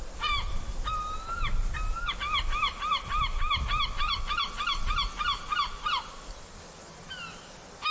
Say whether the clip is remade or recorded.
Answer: recorded